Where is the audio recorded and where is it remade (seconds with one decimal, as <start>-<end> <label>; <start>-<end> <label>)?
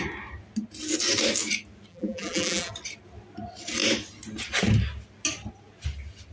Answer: 0.0-1.9 recorded; 1.9-2.7 remade; 2.7-6.3 recorded